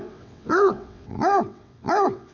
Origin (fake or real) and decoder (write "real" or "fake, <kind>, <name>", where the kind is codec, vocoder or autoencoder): fake, vocoder, WaveNeXt